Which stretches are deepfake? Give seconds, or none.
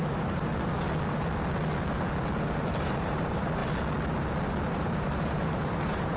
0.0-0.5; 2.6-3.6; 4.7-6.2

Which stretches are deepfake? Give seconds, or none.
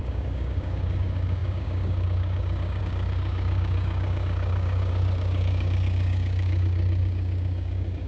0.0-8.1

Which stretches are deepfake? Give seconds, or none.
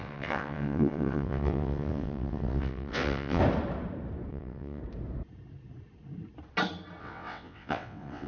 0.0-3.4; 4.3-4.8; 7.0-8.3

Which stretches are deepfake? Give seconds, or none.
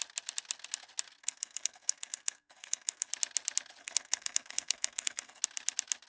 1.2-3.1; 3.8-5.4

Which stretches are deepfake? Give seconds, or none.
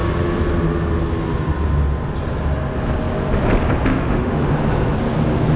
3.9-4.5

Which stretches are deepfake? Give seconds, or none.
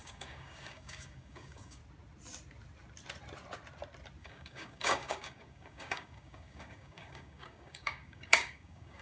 0.0-1.8; 4.2-9.0